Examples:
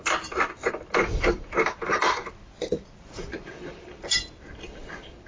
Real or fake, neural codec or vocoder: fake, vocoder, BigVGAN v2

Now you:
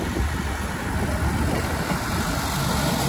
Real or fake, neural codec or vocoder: fake, vocoder, BigVGAN v2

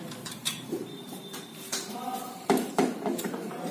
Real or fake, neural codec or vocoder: fake, vocoder, BigVGAN v2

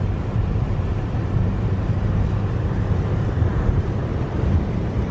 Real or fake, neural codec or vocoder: fake, vocoder, BigVGAN v2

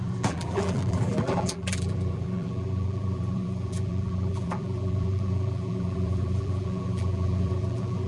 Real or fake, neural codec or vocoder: fake, vocoder, BigVGAN v2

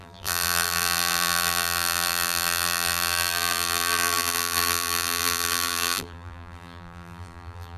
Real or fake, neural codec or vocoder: fake, vocoder, BigVGAN v2